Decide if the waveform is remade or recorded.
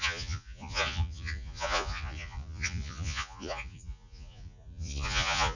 remade